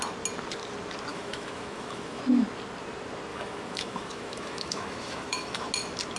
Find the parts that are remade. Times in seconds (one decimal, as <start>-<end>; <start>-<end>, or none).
1.1-2.2; 3.3-5.7